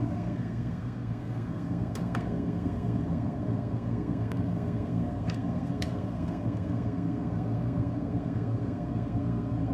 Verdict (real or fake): fake